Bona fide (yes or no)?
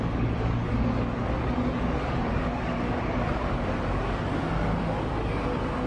no